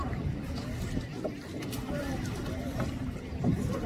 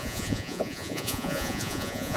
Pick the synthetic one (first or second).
second